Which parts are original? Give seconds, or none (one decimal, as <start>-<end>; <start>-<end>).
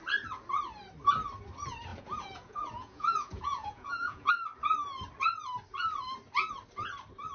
0.0-1.9; 4.3-7.3